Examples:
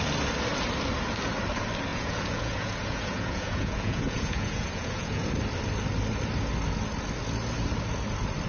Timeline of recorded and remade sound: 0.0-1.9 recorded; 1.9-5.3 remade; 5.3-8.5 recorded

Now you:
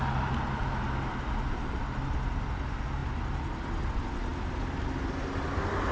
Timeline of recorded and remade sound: 0.0-5.9 recorded

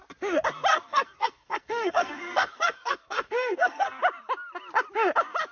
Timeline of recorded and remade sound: 0.0-0.7 recorded; 0.7-4.0 remade; 4.0-5.5 recorded

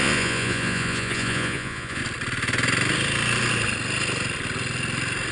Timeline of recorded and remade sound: 0.0-2.0 remade; 2.0-5.3 recorded